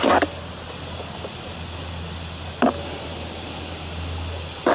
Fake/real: real